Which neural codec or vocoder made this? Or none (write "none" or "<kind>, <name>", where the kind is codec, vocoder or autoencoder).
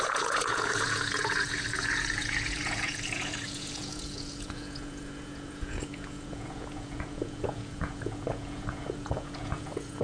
vocoder, Vocos